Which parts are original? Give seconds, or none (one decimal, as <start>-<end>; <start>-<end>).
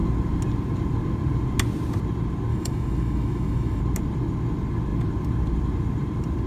0.0-2.5; 3.8-6.5